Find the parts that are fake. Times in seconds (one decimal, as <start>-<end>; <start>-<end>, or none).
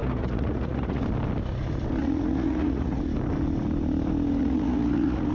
0.0-1.0; 2.0-3.0; 4.4-5.3